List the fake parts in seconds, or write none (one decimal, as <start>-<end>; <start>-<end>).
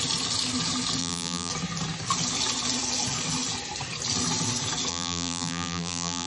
1.0-1.5; 4.9-6.3